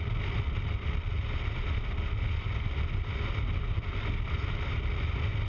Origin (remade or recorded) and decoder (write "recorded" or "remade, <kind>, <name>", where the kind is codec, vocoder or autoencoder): recorded